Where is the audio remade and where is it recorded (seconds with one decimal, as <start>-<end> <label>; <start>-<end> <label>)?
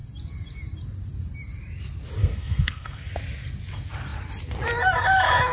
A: 0.0-2.2 recorded; 2.2-3.1 remade; 3.1-5.5 recorded